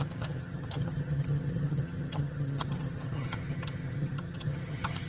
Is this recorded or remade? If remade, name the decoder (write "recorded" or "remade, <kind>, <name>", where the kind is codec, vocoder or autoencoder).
remade, vocoder, HiFi-GAN